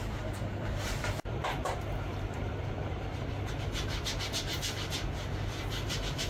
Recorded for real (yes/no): no